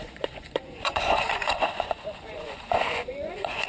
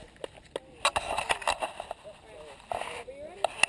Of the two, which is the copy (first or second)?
first